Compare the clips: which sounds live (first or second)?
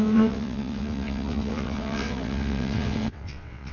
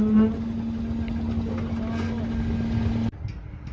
second